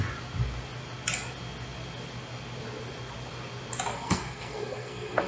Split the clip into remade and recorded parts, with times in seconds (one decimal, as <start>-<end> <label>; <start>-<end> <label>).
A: 0.0-3.9 recorded; 3.9-5.3 remade